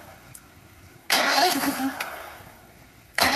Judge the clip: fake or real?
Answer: fake